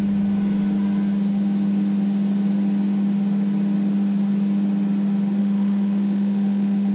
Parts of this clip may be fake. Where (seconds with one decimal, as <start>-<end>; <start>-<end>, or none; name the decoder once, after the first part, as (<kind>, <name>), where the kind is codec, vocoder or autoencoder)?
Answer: 5.4-6.9 (autoencoder, DAC-VAE)